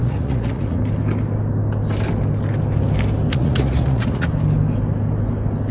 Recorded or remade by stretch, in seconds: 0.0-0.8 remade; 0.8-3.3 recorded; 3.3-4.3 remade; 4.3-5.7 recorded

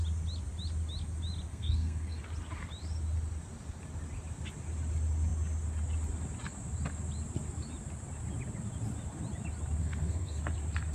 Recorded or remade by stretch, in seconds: 0.0-1.5 recorded; 1.5-2.2 remade; 2.2-9.8 recorded; 9.8-10.4 remade; 10.4-10.9 recorded

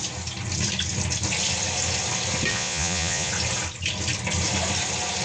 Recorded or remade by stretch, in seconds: 0.0-2.5 recorded; 2.5-3.3 remade; 3.3-5.2 recorded

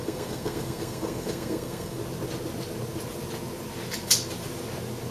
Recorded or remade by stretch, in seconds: 0.0-2.0 remade; 2.0-5.1 recorded